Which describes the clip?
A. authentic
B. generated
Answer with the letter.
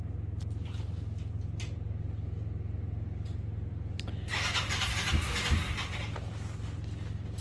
A